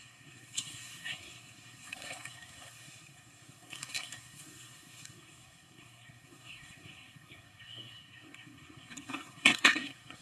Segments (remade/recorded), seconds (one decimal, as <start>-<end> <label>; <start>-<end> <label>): 0.0-10.2 remade